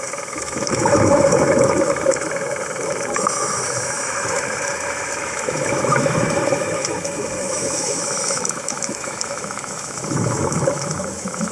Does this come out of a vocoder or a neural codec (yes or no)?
yes